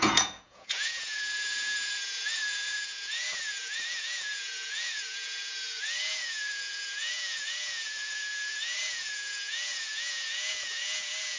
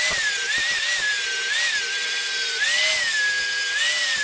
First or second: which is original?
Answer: second